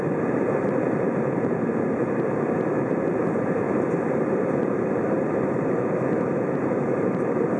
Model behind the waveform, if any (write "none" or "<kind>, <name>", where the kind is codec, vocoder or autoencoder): vocoder, BigVGAN v2